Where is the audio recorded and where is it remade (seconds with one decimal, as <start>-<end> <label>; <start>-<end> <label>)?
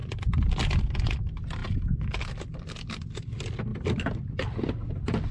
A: 0.0-0.8 remade; 0.8-3.7 recorded; 3.7-4.4 remade; 4.4-5.3 recorded